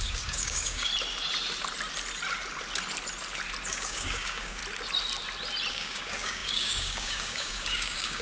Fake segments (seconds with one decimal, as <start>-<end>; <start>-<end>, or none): 0.0-0.9; 3.7-4.6; 5.7-8.2